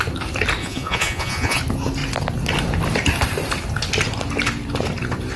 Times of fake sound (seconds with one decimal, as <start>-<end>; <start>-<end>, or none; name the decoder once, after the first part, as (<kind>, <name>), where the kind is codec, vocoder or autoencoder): 0.6-1.6 (vocoder, Vocos)